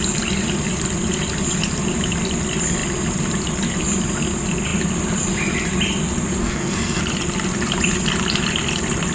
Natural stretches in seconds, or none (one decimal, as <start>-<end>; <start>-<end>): 0.0-6.4; 7.0-9.1